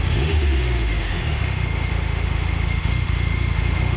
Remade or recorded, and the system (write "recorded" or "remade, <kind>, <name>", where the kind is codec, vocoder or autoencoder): remade, autoencoder, DAC-VAE